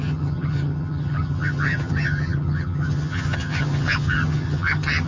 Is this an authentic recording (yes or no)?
no